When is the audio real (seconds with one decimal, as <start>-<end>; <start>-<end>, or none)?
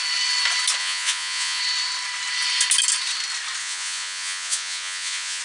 0.0-0.8; 1.6-3.6